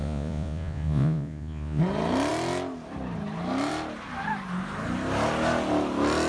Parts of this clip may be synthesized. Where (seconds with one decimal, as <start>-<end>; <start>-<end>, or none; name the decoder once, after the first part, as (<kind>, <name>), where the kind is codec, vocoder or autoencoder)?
0.0-1.8 (vocoder, Vocos)